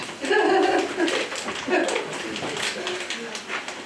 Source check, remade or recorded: recorded